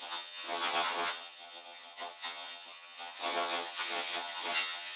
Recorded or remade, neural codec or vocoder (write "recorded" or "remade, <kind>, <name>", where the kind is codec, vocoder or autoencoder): remade, vocoder, HiFi-GAN